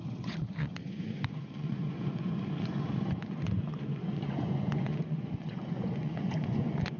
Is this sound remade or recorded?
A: remade